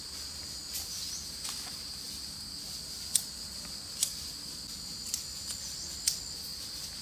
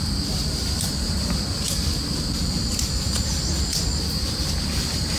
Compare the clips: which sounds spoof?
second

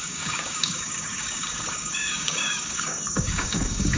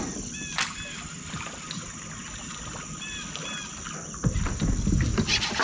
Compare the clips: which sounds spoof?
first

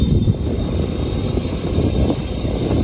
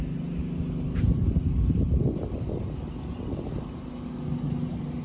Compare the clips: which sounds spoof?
first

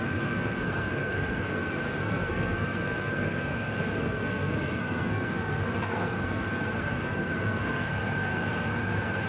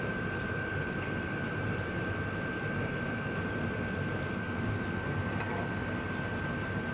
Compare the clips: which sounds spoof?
first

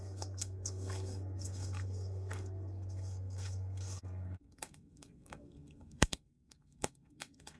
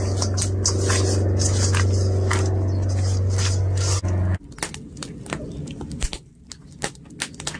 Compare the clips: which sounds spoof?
first